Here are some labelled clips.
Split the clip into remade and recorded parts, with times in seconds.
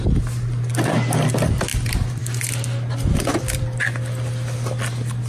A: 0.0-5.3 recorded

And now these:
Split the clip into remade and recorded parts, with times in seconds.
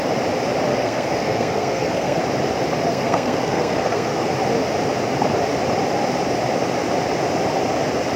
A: 0.0-0.7 recorded; 0.7-2.2 remade; 2.2-2.9 recorded; 2.9-4.3 remade; 4.3-8.2 recorded